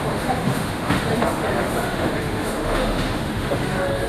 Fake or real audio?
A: fake